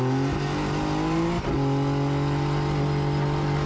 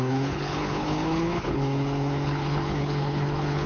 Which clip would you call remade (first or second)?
second